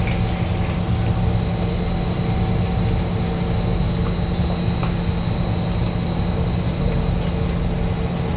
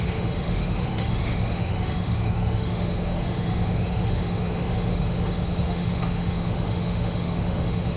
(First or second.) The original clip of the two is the first